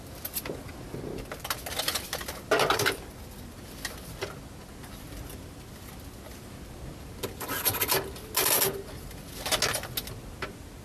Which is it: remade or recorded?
recorded